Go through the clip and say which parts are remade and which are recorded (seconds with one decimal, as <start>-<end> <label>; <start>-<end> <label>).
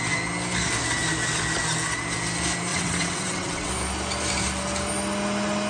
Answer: 0.0-2.7 recorded; 2.7-3.7 remade; 3.7-5.7 recorded